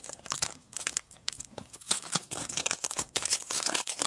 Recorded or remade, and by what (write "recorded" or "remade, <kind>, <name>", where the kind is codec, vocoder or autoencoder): remade, codec, SNAC